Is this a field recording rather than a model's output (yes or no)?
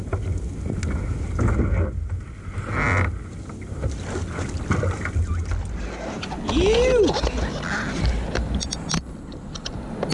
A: yes